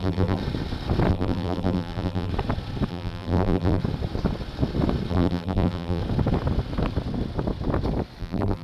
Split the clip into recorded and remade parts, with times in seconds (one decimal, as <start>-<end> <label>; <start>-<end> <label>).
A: 0.0-0.4 remade; 0.4-1.1 recorded; 1.1-2.3 remade; 2.3-2.9 recorded; 2.9-3.8 remade; 3.8-5.1 recorded; 5.1-6.0 remade; 6.0-8.2 recorded; 8.2-8.6 remade